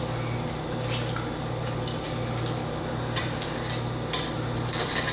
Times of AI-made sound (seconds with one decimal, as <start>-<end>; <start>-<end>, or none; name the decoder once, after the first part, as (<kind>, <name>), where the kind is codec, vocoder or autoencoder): none